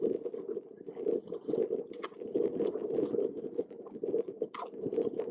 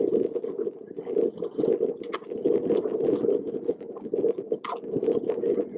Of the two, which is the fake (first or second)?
first